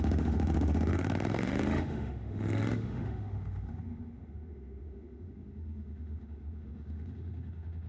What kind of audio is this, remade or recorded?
remade